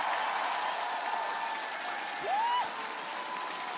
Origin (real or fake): real